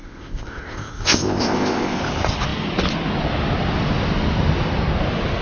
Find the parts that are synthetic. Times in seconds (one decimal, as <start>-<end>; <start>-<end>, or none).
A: 0.0-2.0